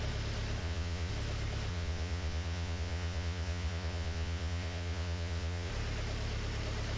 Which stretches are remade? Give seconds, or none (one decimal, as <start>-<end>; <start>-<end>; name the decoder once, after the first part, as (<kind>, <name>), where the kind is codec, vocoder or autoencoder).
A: 0.6-1.1 (vocoder, Vocos); 1.7-5.7